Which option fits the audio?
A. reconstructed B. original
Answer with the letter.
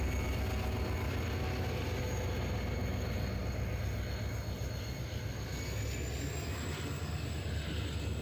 B